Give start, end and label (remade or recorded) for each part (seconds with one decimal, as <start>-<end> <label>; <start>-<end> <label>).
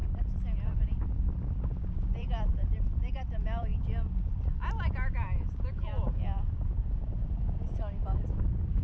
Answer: 0.0-1.9 recorded; 1.9-3.7 remade; 3.7-5.7 recorded; 5.7-8.8 remade